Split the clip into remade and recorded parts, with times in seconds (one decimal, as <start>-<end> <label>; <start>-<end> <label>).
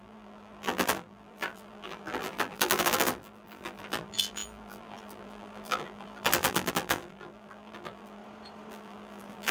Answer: 0.0-8.2 remade; 8.2-8.7 recorded; 8.7-9.5 remade